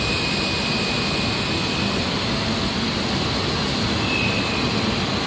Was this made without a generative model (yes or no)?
yes